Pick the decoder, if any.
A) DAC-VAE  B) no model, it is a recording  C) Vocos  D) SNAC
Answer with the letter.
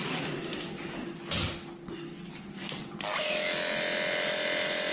B